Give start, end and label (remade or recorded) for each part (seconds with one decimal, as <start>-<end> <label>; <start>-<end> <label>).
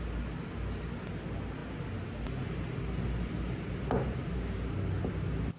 0.0-5.6 recorded